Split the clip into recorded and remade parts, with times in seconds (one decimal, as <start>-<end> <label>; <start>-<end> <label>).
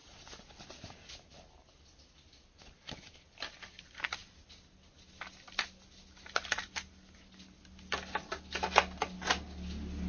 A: 0.0-10.1 recorded